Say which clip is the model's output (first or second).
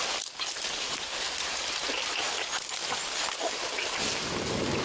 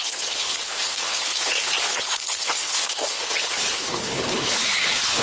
second